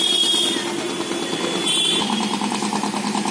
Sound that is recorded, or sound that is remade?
recorded